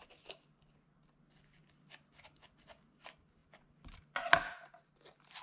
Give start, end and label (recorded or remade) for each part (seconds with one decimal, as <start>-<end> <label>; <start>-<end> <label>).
0.0-5.4 recorded